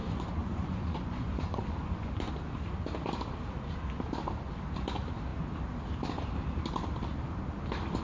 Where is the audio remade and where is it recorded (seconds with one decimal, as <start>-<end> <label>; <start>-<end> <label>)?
0.0-2.3 remade; 2.3-8.0 recorded